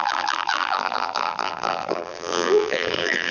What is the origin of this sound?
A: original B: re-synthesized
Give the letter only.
B